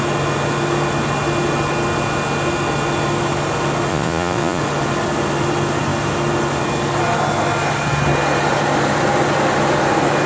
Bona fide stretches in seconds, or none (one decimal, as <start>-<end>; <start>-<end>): 0.0-3.9; 4.6-10.3